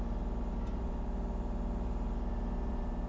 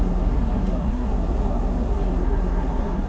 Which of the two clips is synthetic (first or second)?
second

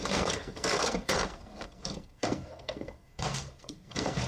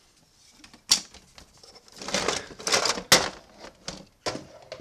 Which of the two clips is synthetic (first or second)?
first